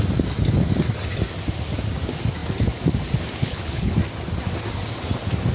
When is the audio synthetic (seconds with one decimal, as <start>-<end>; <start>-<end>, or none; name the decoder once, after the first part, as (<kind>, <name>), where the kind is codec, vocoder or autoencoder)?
3.4-3.9 (codec, HILCodec)